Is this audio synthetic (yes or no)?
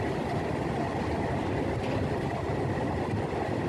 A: no